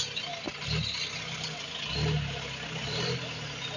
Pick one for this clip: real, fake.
real